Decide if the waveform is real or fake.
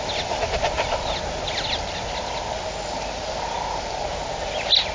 real